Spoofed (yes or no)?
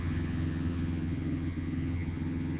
yes